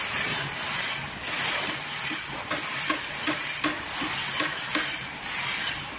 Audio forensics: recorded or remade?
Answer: recorded